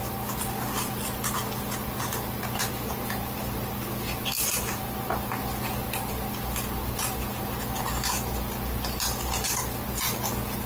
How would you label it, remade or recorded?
recorded